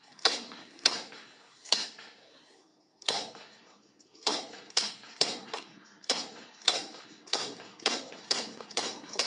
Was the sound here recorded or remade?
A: remade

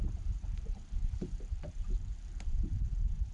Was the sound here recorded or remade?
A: remade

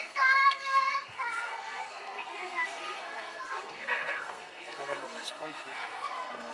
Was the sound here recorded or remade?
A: remade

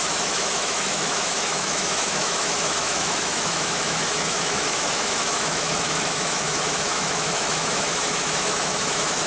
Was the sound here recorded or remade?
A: remade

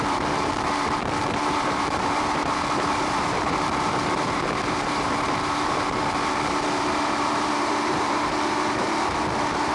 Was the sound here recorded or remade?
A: remade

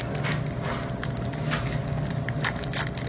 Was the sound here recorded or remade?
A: recorded